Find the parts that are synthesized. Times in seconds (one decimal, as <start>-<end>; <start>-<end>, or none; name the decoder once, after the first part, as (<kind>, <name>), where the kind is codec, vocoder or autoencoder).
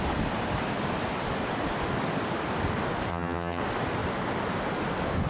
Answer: 3.1-3.6 (vocoder, HiFi-GAN)